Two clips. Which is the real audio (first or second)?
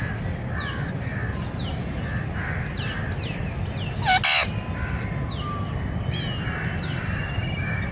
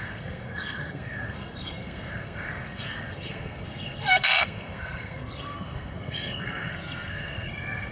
first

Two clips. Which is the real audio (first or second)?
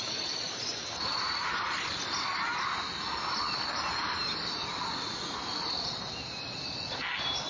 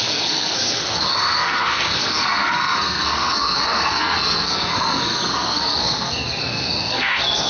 first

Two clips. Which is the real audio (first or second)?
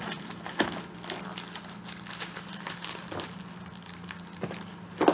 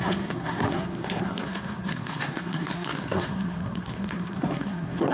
first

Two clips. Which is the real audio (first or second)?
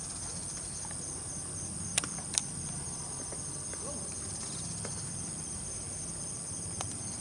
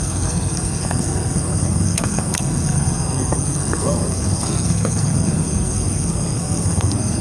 first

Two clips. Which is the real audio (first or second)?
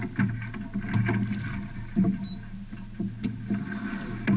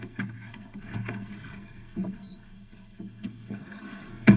first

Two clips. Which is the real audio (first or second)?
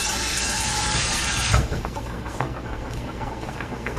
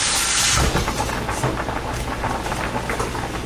second